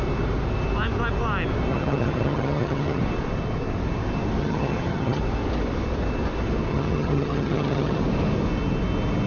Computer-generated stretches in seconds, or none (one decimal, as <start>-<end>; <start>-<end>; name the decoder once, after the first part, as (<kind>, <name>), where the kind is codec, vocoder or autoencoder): 1.7-3.0 (vocoder, HiFi-GAN); 4.4-5.2; 6.7-8.0